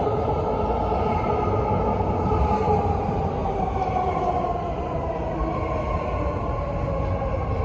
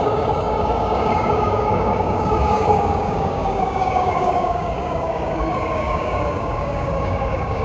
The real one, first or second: first